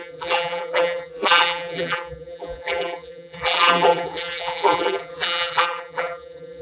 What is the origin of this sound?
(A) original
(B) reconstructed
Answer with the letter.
B